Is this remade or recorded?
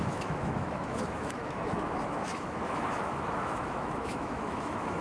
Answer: remade